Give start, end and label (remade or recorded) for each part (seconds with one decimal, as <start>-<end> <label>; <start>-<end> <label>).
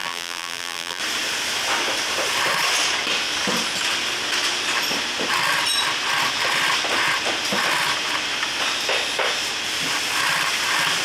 0.0-1.0 remade; 1.0-11.0 recorded